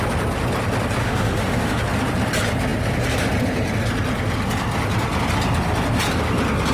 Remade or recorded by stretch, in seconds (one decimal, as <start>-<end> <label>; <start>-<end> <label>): 0.0-1.0 recorded; 1.0-1.8 remade; 1.8-6.7 recorded